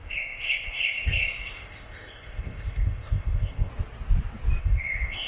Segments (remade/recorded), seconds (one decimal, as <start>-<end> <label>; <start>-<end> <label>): 0.0-3.7 remade; 3.7-4.6 recorded; 4.6-5.3 remade